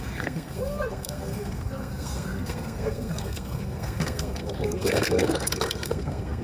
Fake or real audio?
fake